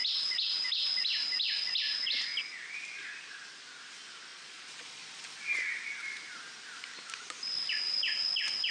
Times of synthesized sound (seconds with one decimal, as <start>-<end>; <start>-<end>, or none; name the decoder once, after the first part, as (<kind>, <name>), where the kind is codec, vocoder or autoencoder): 4.3-5.2 (vocoder, Vocos)